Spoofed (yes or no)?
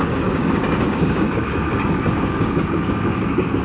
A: yes